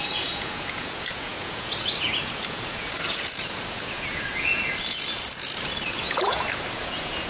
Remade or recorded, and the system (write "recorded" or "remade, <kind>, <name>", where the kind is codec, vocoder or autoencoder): remade, vocoder, Vocos